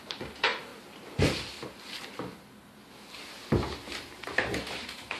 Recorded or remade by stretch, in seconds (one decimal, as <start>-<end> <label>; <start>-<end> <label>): 0.0-0.7 remade; 0.7-3.8 recorded; 3.8-5.2 remade

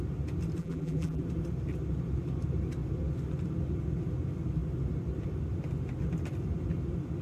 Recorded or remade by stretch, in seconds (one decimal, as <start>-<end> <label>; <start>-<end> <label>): 0.0-0.6 recorded; 0.6-1.2 remade; 1.2-7.2 recorded